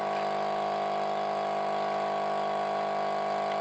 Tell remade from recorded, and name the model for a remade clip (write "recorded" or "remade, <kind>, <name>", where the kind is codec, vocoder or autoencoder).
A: recorded